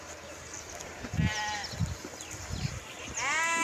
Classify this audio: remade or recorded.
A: recorded